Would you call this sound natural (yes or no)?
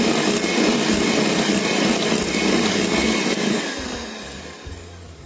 yes